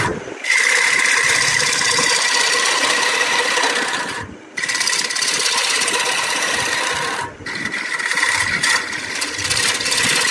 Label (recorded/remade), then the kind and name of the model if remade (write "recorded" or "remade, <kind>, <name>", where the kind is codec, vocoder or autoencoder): remade, vocoder, BigVGAN v2